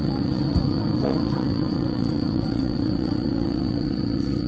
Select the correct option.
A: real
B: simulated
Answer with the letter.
B